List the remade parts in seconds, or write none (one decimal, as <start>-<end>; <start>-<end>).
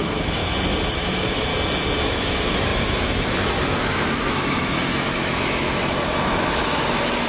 0.0-0.4; 0.9-1.5; 2.0-7.3